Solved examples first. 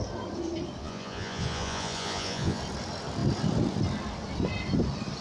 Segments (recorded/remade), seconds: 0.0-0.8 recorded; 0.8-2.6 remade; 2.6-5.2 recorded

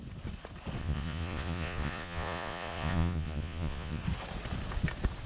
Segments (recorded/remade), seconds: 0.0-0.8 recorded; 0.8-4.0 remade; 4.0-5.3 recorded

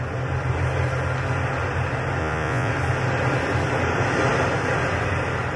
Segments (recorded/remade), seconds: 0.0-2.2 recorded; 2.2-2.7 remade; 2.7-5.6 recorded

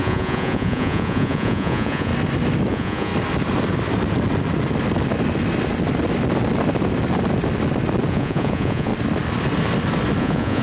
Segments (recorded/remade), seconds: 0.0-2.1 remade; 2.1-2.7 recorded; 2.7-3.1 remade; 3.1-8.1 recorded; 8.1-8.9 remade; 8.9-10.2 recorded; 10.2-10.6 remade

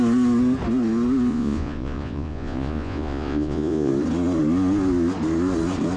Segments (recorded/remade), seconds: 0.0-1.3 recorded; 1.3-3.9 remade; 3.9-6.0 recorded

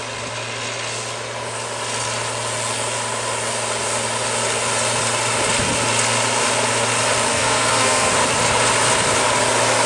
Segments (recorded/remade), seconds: 0.0-7.3 recorded; 7.3-8.1 remade; 8.1-9.9 recorded

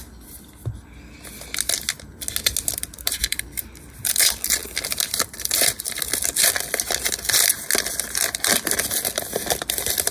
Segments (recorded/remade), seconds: 0.0-0.6 remade; 0.6-2.7 recorded; 2.7-4.6 remade; 4.6-9.5 recorded; 9.5-10.1 remade